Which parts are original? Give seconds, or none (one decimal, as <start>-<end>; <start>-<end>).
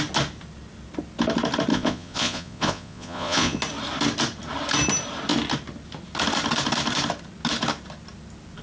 0.0-1.7; 3.6-8.6